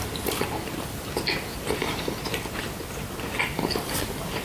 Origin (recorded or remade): recorded